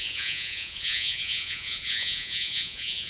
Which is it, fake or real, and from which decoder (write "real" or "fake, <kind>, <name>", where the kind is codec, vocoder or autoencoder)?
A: fake, vocoder, Vocos